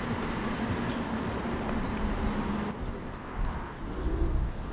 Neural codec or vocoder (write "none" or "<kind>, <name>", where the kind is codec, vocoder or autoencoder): none